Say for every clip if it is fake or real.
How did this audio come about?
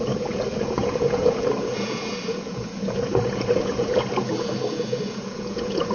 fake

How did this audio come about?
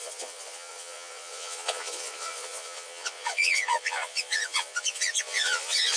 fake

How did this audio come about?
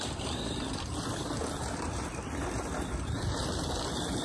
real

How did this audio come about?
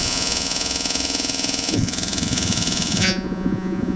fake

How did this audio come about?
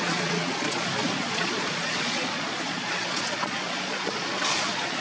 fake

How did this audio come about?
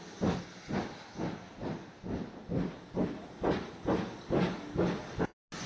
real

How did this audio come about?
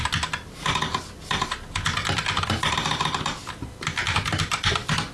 real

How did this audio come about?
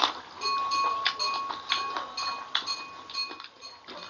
real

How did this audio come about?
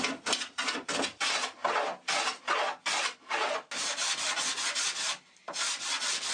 real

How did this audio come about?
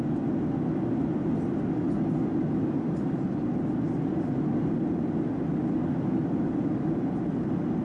real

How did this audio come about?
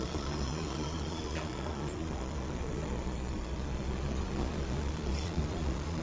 fake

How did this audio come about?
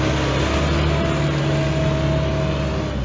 real